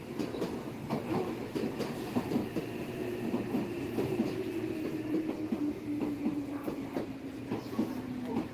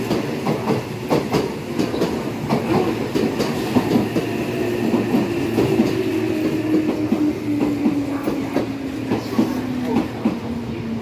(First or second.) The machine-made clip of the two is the first